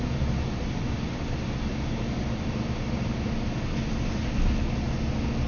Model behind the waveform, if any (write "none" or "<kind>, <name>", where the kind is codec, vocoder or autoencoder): none